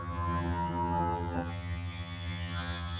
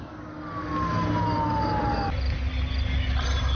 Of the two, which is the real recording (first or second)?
second